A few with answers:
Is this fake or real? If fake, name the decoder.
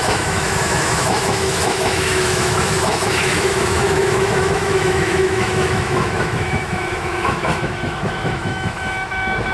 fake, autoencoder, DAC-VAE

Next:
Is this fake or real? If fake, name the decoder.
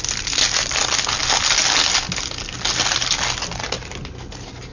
real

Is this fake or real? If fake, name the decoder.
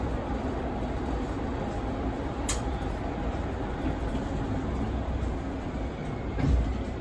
real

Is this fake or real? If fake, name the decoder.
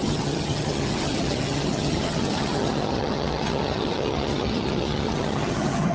fake, vocoder, HiFi-GAN